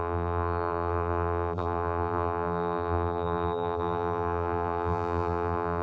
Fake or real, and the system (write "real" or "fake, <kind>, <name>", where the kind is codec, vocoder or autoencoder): fake, vocoder, BigVGAN v2